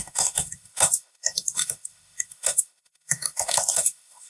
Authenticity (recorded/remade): remade